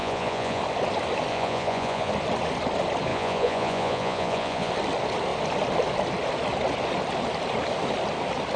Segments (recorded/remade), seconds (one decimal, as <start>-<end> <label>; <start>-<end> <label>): 0.0-0.6 remade; 0.6-1.3 recorded; 1.3-2.1 remade; 2.1-3.1 recorded; 3.1-4.7 remade; 4.7-8.6 recorded